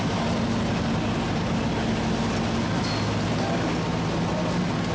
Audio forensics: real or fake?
real